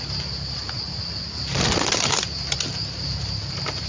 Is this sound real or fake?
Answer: real